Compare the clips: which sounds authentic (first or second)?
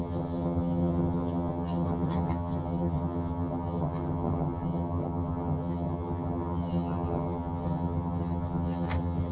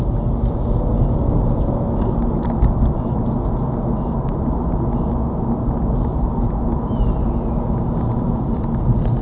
second